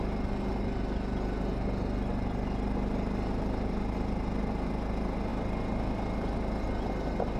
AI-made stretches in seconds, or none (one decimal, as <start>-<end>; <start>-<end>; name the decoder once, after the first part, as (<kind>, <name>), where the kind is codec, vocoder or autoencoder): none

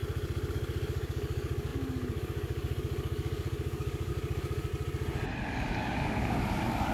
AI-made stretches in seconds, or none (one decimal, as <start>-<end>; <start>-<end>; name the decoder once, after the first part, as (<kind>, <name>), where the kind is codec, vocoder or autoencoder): 0.5-4.7 (codec, DAC); 5.4-6.9

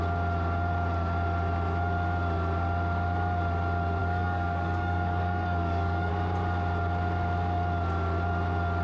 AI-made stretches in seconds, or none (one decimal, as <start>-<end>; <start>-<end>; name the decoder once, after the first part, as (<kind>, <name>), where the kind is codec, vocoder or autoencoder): 4.0-6.1 (codec, DAC)